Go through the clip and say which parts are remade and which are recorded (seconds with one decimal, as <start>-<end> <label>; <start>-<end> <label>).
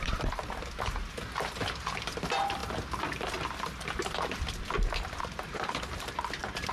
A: 0.0-2.6 remade; 2.6-5.2 recorded; 5.2-6.7 remade